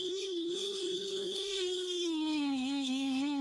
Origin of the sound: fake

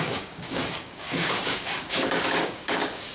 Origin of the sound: fake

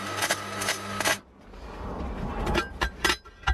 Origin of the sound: real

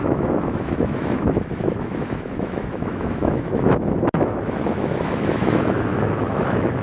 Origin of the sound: fake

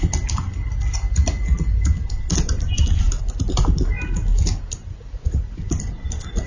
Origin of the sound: real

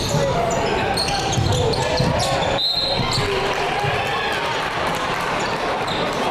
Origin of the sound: real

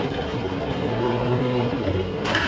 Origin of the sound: fake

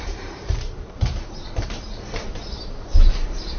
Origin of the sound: fake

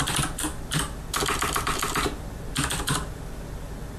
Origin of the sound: real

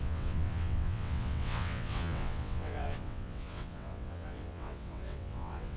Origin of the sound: fake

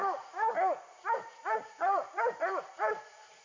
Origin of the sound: fake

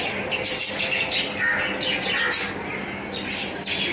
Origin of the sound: real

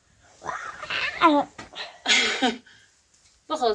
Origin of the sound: real